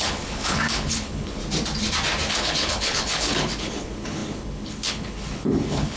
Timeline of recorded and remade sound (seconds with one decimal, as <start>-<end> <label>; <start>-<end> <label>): 0.0-1.4 remade; 1.4-2.3 recorded; 2.3-6.0 remade